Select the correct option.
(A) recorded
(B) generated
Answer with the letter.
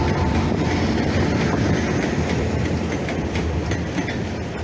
A